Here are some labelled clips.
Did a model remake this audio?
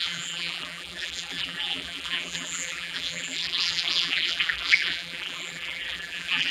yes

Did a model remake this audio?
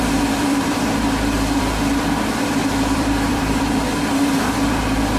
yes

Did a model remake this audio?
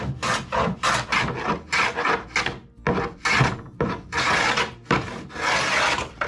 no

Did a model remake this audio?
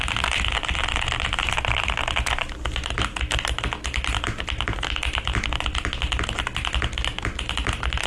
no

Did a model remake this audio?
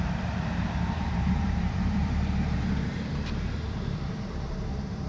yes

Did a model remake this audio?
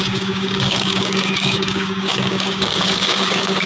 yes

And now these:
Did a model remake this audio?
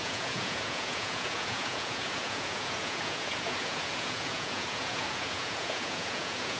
yes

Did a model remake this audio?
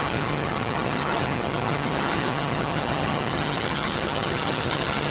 yes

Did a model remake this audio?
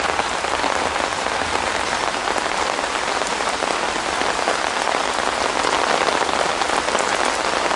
no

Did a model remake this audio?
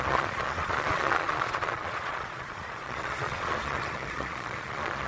yes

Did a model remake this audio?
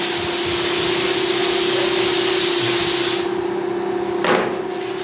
no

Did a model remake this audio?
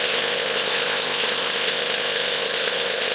yes